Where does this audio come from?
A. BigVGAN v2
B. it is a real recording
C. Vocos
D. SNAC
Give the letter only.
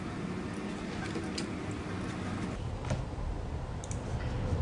B